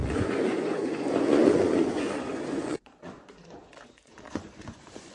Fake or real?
fake